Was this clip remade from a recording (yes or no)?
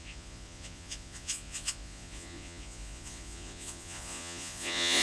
yes